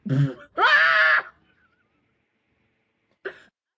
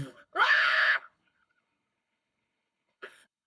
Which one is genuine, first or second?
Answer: first